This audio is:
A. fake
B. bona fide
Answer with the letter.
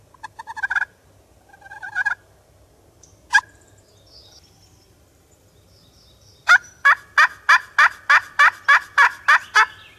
B